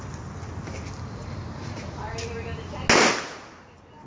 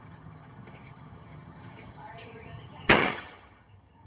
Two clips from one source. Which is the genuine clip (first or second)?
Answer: first